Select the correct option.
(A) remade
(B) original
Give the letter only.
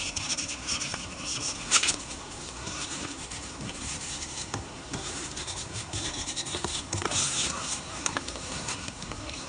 A